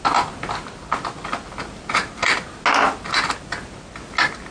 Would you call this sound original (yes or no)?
yes